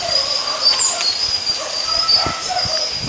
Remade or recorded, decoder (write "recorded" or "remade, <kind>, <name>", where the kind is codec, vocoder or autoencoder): remade, vocoder, BigVGAN v2